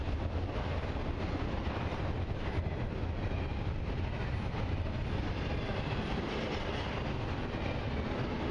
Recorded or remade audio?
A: recorded